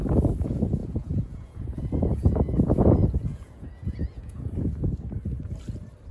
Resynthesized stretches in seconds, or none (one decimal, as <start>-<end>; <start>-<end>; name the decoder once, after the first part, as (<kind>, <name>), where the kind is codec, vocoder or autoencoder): 0.8-4.5 (vocoder, Vocos)